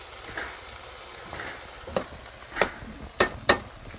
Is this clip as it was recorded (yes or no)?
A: yes